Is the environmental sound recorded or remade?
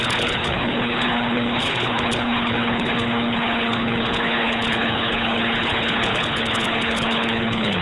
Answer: remade